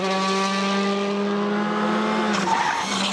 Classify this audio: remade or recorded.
recorded